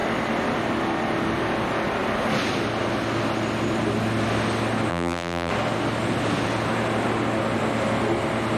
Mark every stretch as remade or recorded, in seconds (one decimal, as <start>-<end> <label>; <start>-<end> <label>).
0.0-4.9 recorded; 4.9-5.5 remade; 5.5-8.6 recorded